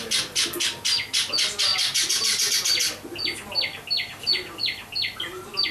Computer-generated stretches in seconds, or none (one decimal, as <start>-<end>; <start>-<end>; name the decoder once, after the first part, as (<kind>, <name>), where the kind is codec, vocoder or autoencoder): none